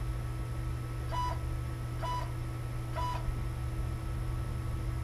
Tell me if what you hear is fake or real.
real